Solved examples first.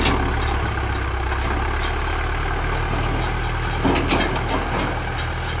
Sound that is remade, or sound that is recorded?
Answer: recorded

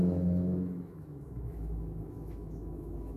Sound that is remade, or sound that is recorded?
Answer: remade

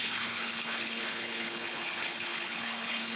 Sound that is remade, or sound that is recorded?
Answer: remade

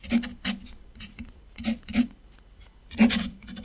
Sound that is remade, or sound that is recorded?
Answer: remade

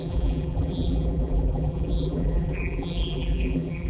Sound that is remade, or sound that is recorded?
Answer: remade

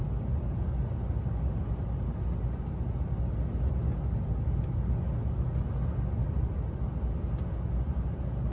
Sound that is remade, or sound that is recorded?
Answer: recorded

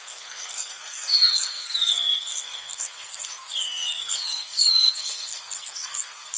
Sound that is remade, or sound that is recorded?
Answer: remade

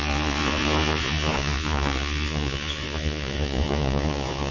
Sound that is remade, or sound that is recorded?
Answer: remade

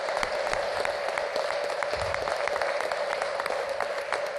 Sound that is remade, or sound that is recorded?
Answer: recorded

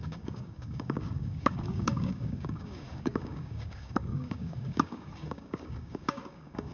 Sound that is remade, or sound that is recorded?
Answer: remade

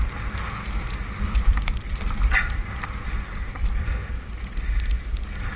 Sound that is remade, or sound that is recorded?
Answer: recorded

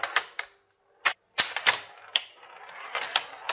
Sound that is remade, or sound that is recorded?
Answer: recorded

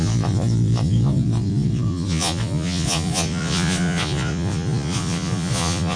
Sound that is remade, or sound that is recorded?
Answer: remade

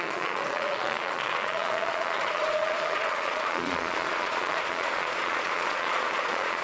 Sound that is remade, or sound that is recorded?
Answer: remade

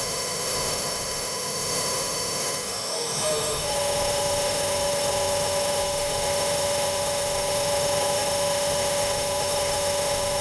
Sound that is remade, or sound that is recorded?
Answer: remade